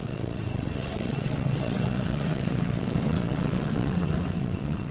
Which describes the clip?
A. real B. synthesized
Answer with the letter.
B